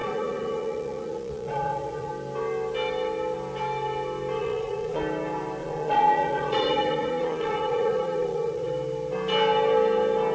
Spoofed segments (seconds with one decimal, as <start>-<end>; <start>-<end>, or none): 0.0-2.1; 4.4-5.0; 5.6-8.7